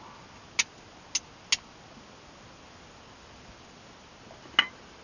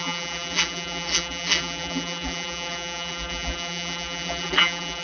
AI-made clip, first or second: second